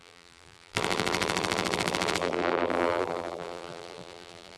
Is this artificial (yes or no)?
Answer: yes